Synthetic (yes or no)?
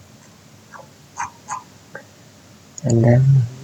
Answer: no